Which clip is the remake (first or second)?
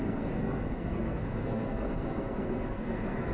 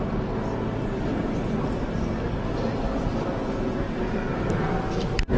first